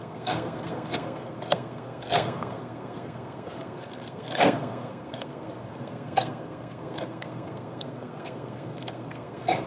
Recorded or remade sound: remade